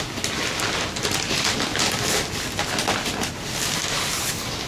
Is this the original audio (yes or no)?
yes